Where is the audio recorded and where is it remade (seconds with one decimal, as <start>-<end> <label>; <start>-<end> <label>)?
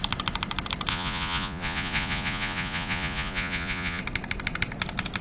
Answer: 0.0-0.9 recorded; 0.9-4.0 remade; 4.0-5.2 recorded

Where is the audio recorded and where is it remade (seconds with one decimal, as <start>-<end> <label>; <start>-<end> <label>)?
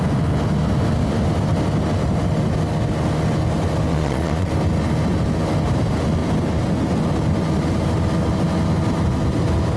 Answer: 0.0-3.9 recorded; 3.9-4.5 remade; 4.5-9.8 recorded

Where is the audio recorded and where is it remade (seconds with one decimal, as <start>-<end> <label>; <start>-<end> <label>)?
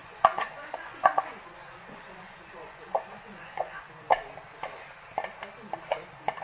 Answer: 0.0-3.8 remade; 3.8-6.4 recorded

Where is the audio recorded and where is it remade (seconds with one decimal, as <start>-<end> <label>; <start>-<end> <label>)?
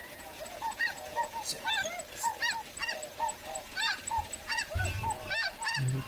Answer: 0.0-1.7 remade; 1.7-3.3 recorded; 3.3-5.0 remade; 5.0-6.1 recorded